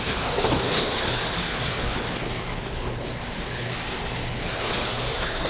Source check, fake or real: fake